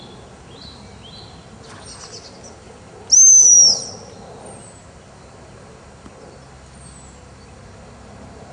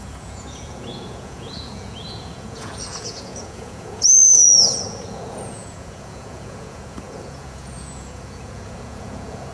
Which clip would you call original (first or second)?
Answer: first